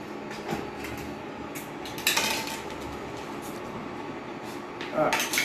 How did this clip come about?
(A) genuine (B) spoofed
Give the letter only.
A